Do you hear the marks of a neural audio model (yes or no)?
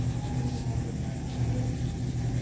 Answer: no